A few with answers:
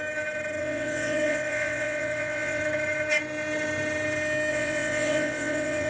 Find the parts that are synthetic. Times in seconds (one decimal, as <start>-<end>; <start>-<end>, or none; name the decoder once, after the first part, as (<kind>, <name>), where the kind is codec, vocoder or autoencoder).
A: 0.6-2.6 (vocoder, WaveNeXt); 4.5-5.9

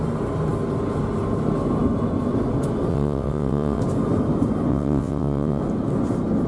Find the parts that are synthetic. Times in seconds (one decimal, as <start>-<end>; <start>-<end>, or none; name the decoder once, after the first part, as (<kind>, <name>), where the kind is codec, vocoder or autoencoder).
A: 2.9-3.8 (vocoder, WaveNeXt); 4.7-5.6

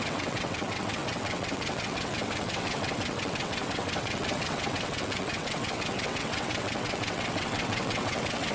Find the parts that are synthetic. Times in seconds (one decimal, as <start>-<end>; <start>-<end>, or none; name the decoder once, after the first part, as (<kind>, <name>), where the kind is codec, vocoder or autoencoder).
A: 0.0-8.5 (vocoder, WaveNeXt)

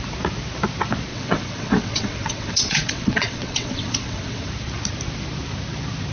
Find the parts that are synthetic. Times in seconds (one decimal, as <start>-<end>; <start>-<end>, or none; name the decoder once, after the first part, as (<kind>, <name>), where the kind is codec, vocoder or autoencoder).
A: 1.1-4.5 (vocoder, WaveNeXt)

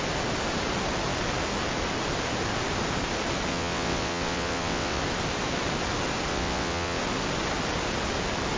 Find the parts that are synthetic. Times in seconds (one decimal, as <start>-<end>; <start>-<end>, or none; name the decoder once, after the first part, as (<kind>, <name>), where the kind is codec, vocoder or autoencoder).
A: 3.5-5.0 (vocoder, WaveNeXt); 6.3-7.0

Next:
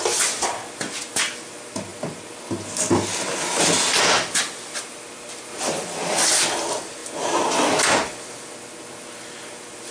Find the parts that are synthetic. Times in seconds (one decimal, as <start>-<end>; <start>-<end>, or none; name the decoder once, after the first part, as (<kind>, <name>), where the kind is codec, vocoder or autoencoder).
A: none

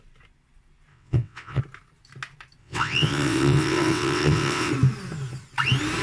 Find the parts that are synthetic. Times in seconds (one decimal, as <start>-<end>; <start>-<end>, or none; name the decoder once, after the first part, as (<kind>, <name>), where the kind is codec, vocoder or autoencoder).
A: 0.9-1.6 (vocoder, WaveNeXt); 2.6-4.7

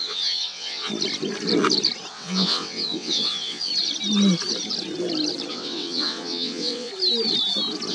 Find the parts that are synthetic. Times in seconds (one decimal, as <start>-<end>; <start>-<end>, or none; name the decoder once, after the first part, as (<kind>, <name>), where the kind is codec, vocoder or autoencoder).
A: 0.0-0.9 (vocoder, WaveNeXt); 2.1-3.7; 5.5-6.9